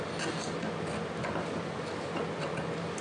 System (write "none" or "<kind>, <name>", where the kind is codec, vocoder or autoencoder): none